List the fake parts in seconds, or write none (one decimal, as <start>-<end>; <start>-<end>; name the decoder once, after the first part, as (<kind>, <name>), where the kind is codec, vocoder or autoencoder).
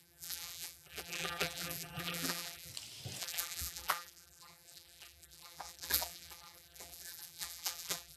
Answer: 0.0-2.7 (vocoder, BigVGAN v2); 3.2-8.2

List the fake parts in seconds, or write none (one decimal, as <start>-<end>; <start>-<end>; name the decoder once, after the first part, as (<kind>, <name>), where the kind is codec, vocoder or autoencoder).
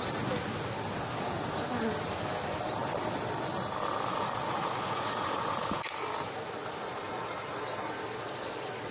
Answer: 4.1-5.9 (vocoder, Vocos); 7.0-7.6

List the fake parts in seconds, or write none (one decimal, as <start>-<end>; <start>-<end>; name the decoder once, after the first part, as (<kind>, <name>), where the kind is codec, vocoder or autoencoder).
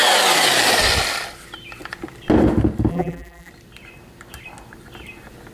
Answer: 2.9-3.5 (vocoder, BigVGAN v2)